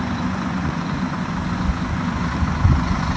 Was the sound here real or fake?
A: fake